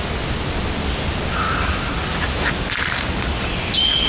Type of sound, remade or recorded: recorded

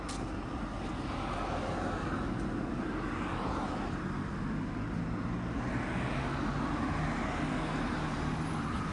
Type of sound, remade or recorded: recorded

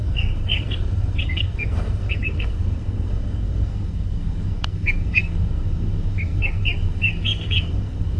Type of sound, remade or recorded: remade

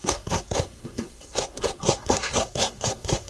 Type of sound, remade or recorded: remade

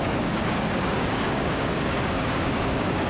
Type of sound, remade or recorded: remade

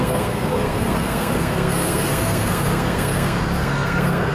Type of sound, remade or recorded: remade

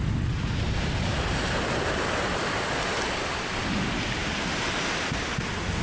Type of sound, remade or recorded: recorded